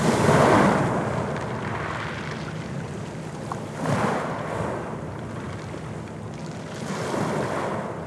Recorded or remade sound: recorded